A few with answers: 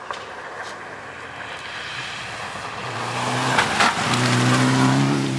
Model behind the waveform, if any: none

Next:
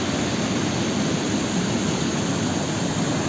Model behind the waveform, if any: none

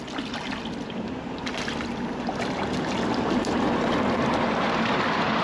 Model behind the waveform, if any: none